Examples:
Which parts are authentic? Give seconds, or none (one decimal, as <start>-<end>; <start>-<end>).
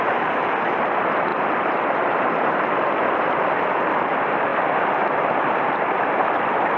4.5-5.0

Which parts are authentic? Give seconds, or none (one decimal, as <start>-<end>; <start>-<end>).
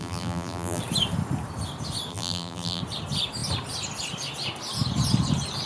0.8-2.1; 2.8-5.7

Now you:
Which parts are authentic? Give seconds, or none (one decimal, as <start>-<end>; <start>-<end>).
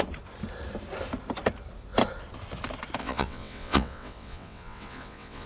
0.0-3.0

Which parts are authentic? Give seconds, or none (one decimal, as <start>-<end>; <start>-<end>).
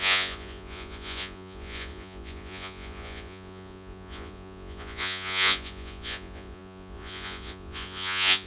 none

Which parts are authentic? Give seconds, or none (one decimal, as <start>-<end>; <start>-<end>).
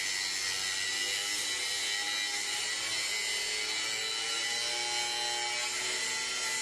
0.0-6.6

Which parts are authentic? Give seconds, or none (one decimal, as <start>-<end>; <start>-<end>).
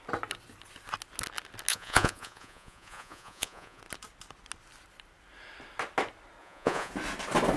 0.0-1.7; 3.8-6.4; 6.9-7.6